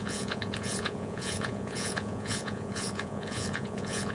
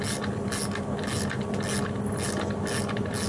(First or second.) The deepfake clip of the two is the first